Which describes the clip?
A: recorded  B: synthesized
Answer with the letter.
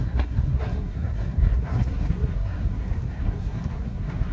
B